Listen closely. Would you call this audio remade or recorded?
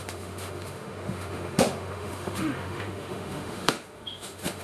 remade